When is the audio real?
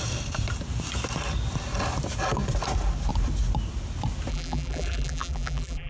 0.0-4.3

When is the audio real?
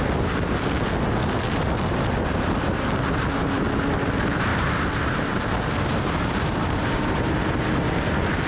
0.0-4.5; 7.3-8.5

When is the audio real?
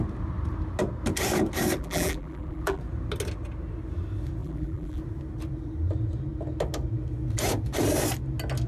0.0-1.8; 2.8-4.4; 5.0-8.7